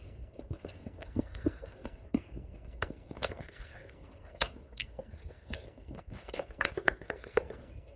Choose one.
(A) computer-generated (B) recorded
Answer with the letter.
A